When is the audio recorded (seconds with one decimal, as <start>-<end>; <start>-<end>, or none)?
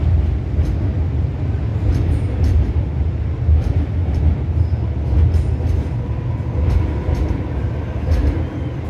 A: 0.0-1.7; 4.2-8.9